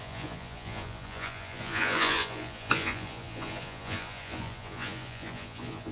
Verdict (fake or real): fake